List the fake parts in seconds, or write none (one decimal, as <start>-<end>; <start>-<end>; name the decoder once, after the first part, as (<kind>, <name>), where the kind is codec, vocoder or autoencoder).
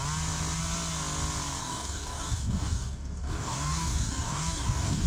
1.6-5.1 (codec, DAC)